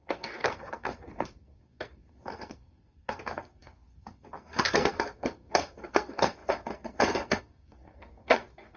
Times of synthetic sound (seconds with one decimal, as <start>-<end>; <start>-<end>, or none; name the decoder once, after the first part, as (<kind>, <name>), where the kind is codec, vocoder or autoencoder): 0.0-8.8 (codec, SNAC)